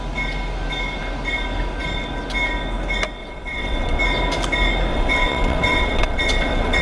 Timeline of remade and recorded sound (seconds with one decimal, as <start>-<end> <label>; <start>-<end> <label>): 0.0-3.2 recorded; 3.2-4.0 remade; 4.0-4.9 recorded; 4.9-6.8 remade